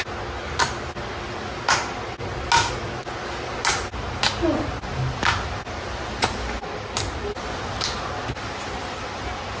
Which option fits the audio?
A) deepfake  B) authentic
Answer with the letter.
B